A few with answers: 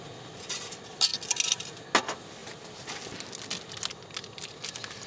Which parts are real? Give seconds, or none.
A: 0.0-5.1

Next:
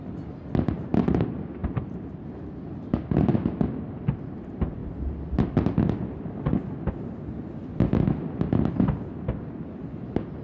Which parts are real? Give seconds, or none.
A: 0.0-10.4

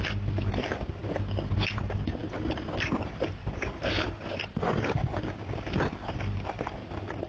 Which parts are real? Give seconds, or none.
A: 0.0-7.3

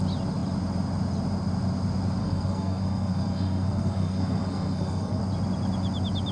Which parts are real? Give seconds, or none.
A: 0.0-2.2; 5.2-6.3

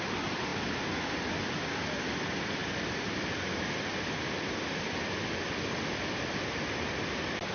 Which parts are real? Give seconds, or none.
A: 0.0-7.5